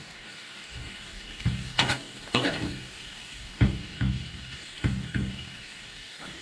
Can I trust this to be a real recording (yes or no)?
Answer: no